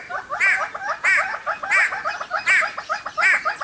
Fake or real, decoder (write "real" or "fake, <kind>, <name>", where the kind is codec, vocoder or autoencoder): real